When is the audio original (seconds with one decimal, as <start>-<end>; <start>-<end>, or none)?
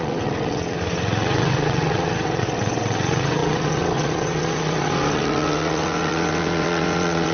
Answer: none